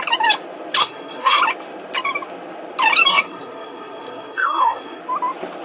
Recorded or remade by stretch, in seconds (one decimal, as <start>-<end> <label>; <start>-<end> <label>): 0.0-0.8 recorded; 0.8-1.4 remade; 1.4-3.1 recorded; 3.1-5.0 remade; 5.0-5.6 recorded